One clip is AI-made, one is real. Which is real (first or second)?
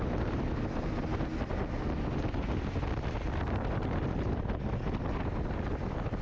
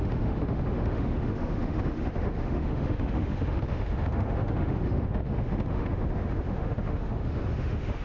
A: first